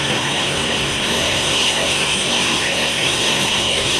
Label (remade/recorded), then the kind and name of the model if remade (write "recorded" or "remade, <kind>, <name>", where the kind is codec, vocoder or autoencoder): remade, codec, SNAC